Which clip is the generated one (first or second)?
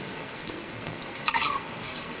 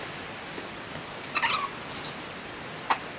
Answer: first